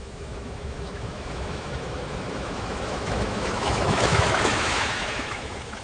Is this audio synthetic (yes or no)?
yes